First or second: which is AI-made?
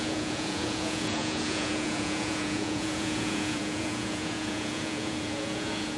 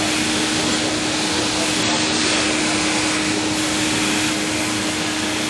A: first